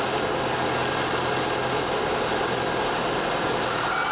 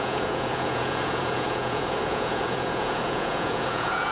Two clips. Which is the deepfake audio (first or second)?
second